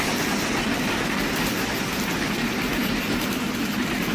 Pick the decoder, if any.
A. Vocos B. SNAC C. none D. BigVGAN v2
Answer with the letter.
C